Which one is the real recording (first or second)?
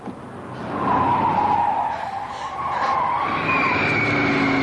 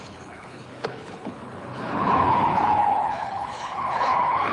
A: first